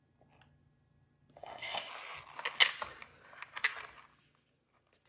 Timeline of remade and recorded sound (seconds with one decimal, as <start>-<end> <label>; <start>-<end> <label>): 0.0-1.4 recorded; 1.4-1.9 remade; 1.9-5.1 recorded